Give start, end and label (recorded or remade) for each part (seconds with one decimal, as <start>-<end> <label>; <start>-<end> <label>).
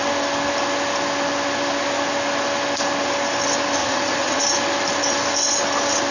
0.0-3.8 recorded; 3.8-4.4 remade; 4.4-6.1 recorded